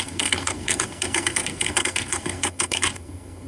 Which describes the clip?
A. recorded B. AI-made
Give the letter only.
B